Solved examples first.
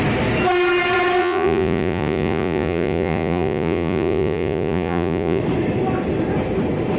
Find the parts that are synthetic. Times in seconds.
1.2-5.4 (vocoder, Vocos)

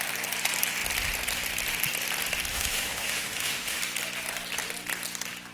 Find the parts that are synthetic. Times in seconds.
2.5-3.8 (autoencoder, DAC-VAE)